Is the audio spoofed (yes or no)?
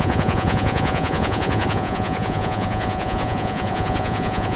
yes